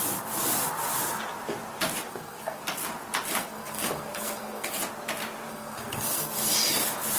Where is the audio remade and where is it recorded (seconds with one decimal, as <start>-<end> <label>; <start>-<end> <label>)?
0.0-2.1 recorded; 2.1-2.6 remade; 2.6-3.4 recorded; 3.4-4.8 remade; 4.8-5.5 recorded; 5.5-6.5 remade; 6.5-7.2 recorded